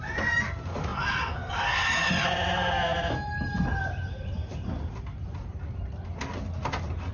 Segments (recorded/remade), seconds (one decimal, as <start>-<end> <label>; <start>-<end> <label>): 0.0-0.9 recorded; 0.9-1.5 remade; 1.5-7.1 recorded